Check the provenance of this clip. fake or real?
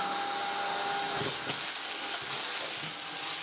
real